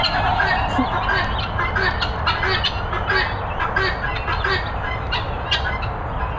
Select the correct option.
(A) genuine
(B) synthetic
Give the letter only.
A